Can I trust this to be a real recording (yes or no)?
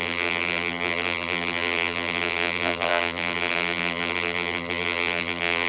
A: no